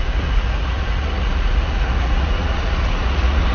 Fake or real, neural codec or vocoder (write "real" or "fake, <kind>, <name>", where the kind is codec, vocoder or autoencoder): fake, vocoder, Vocos